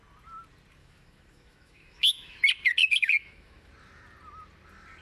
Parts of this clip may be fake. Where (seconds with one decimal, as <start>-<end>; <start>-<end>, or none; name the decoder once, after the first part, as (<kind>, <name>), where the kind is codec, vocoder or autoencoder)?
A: 0.8-2.4 (autoencoder, DAC-VAE); 2.8-3.7